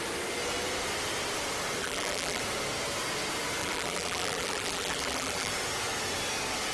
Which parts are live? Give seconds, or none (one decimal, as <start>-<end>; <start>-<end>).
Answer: 0.0-1.8; 2.4-3.6; 5.5-6.7